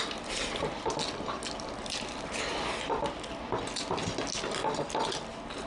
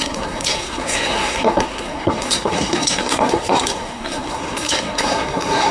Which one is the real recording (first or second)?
first